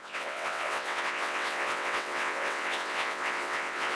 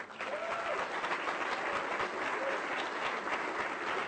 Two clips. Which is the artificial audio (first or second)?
first